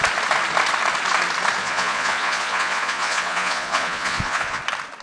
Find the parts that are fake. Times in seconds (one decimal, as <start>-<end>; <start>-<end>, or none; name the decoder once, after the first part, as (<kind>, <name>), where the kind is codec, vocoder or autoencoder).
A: 1.6-4.6 (vocoder, Vocos)